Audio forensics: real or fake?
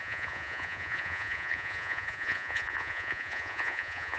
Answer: fake